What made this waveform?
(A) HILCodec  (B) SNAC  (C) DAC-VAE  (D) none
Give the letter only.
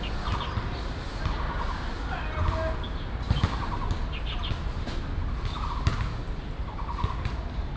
D